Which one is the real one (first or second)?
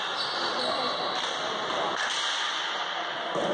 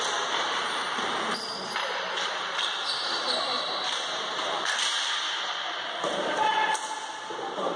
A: first